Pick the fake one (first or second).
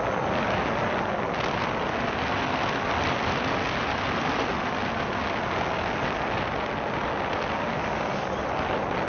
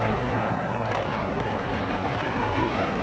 second